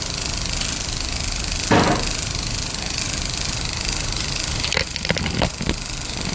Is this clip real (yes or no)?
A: no